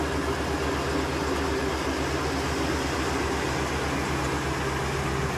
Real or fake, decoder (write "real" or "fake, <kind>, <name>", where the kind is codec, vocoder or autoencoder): real